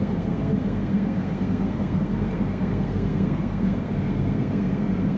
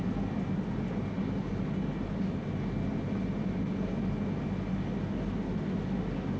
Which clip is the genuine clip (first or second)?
second